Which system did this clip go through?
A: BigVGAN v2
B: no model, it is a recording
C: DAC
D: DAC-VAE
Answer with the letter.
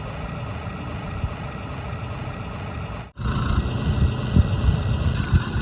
B